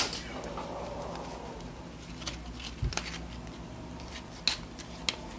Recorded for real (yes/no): yes